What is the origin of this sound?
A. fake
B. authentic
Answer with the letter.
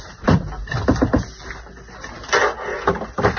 B